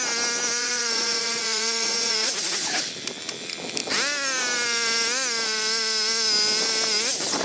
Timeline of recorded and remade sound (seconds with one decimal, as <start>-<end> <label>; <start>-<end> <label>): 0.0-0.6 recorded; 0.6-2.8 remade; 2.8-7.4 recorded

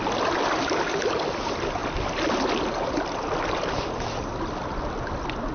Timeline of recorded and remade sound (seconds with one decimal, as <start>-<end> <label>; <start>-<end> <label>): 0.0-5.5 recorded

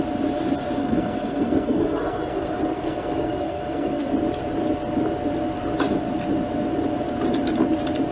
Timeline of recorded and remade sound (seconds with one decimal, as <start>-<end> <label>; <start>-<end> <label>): 0.0-0.8 recorded; 0.8-4.1 remade; 4.1-8.1 recorded

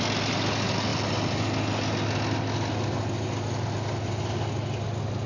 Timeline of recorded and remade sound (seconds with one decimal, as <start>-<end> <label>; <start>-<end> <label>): 0.0-5.3 recorded

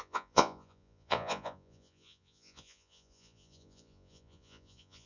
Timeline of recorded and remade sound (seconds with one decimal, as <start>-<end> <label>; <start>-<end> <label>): 0.0-5.1 remade